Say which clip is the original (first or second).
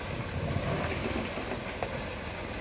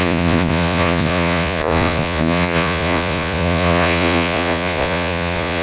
first